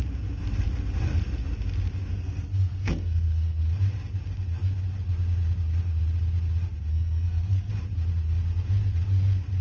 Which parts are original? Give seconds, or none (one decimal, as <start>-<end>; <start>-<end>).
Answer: 0.0-2.1; 3.6-6.9; 7.7-9.6

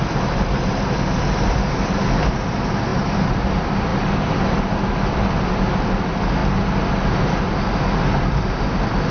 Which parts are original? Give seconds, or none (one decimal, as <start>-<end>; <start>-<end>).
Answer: 0.0-2.9; 3.5-3.9; 4.4-9.1

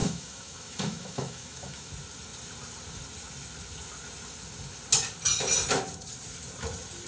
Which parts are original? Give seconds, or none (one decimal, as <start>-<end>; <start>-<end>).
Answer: 1.9-7.1

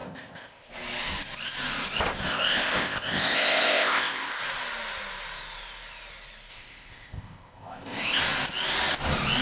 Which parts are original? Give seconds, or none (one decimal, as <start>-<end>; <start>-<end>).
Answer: 0.7-2.3; 4.4-6.5; 8.2-9.4

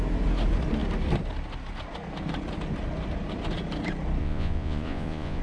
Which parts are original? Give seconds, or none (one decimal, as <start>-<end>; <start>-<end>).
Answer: 0.0-4.2

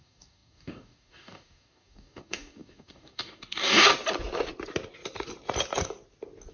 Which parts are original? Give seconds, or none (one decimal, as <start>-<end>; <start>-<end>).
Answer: 3.9-6.5